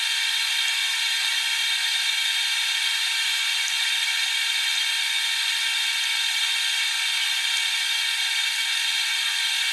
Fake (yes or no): no